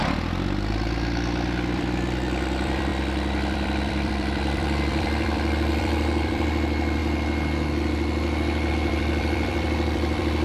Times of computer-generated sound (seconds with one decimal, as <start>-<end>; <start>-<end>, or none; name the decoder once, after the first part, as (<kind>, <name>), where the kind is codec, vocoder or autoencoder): 0.0-7.0 (vocoder, BigVGAN v2); 8.7-10.4